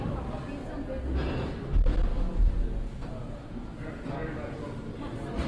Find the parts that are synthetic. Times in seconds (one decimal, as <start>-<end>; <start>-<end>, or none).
none